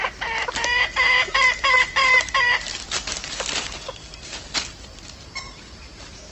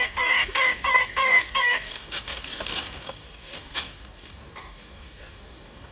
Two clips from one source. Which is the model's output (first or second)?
second